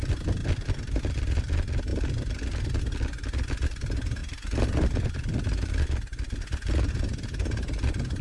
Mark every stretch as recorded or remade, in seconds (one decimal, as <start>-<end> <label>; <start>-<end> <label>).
0.0-8.2 recorded